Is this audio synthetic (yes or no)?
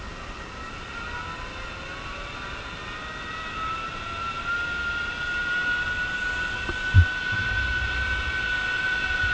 no